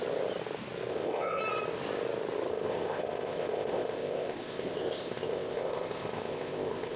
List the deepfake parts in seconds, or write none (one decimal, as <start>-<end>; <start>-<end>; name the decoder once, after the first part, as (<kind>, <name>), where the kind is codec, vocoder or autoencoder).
0.9-1.4 (codec, ZipCodec); 2.5-7.0